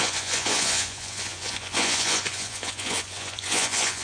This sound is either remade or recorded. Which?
remade